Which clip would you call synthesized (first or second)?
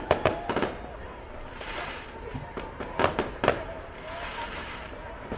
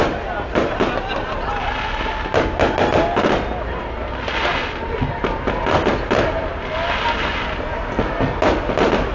first